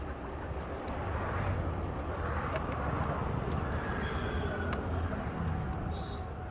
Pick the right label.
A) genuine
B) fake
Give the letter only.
A